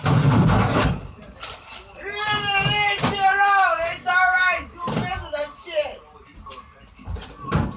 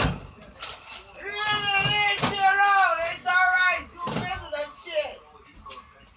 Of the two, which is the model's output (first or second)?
first